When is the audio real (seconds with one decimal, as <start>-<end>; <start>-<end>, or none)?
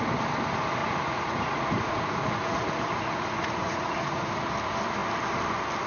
0.0-0.8; 4.3-5.9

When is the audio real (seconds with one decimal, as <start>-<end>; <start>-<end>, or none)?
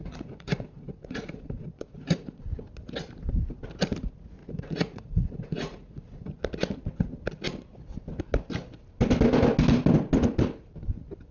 2.4-4.4; 6.3-11.3